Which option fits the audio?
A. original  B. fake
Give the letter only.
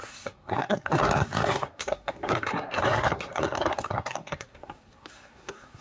B